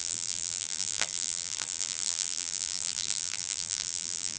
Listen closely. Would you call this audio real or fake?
fake